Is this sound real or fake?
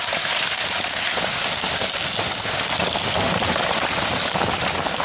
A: real